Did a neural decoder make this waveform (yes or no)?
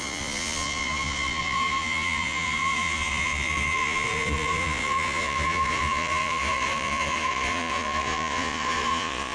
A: yes